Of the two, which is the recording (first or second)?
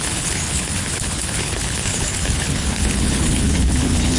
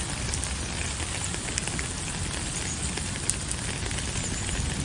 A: second